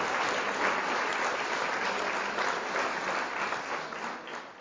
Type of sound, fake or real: real